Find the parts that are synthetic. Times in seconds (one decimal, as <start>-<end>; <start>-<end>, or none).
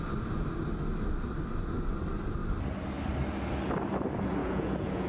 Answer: 4.4-5.1